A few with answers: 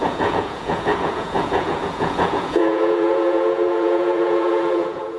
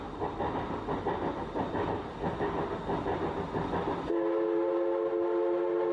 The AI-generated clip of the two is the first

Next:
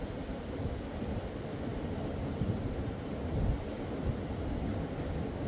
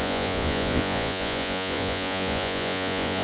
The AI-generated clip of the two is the second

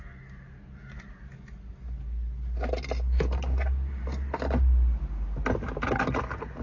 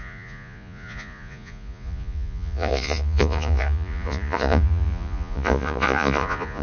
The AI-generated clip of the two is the second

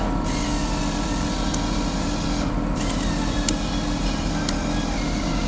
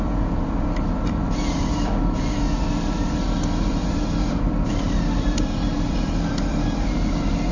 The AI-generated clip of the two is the second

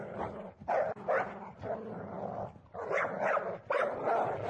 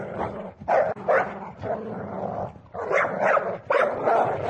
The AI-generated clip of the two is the second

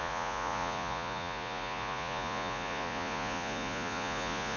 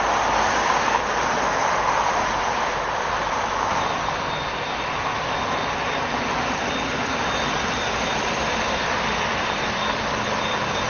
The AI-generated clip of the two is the first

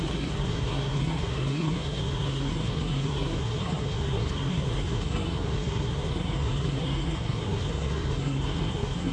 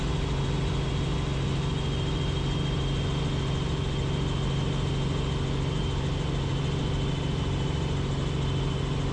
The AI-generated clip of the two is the first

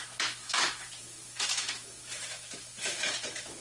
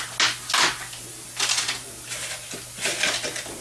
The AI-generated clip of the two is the first